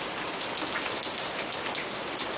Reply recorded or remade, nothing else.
recorded